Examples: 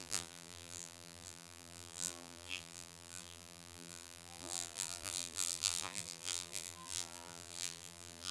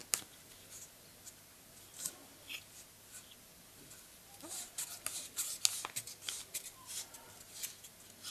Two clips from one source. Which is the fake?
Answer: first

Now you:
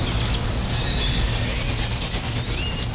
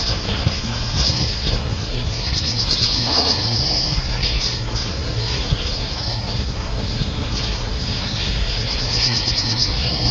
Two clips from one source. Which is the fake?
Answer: second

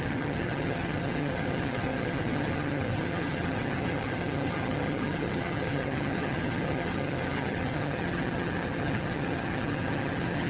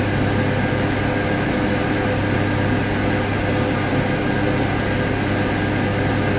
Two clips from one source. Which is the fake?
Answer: first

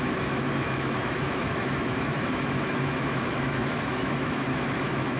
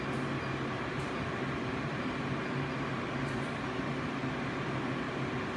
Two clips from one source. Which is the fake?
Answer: first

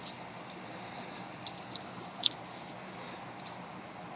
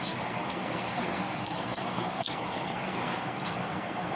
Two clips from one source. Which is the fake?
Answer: second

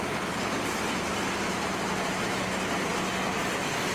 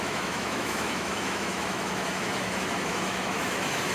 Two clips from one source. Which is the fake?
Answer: second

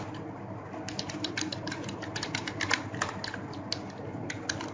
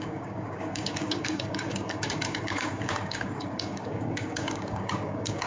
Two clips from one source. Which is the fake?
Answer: second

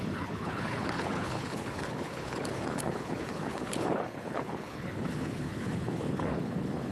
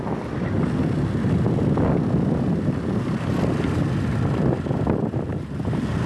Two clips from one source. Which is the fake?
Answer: first